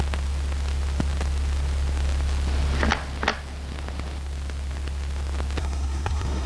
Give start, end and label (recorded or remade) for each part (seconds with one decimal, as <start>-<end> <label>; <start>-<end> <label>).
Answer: 0.0-5.6 recorded; 5.6-6.5 remade